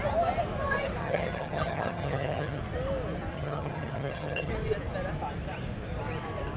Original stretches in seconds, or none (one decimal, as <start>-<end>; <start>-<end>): 0.0-1.0; 2.6-3.3; 4.5-6.6